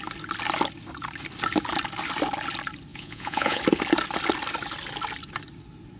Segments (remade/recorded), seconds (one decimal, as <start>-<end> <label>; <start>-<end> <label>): 0.0-2.9 recorded; 2.9-3.6 remade; 3.6-6.0 recorded